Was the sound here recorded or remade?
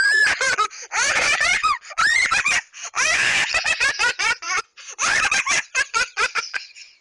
remade